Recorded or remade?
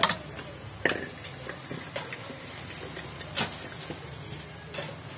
recorded